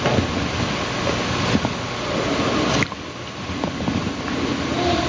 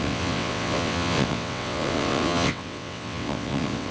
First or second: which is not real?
second